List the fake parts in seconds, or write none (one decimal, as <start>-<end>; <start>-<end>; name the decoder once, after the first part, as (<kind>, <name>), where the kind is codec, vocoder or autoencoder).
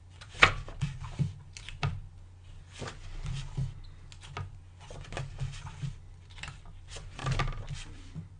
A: 0.0-1.9 (vocoder, BigVGAN v2); 6.1-7.2